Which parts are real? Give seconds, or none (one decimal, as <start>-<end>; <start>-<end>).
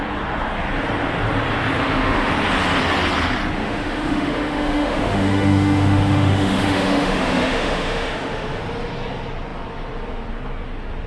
0.0-1.8; 2.3-3.6; 8.6-11.1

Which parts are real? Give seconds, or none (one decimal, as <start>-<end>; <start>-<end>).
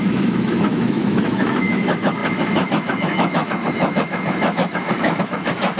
none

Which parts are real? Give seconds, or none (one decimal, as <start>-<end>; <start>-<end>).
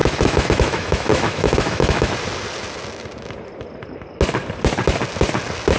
2.1-5.8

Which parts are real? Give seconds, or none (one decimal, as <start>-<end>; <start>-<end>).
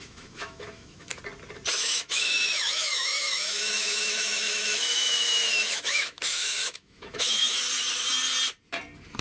1.1-1.7; 7.6-9.2